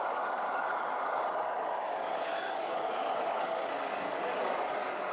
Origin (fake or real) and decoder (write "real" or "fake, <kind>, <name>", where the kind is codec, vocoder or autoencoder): fake, codec, DAC